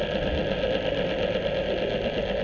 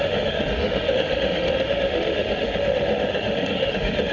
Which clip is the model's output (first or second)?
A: second